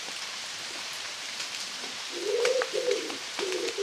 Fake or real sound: fake